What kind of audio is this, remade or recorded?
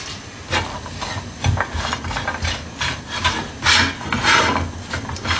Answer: recorded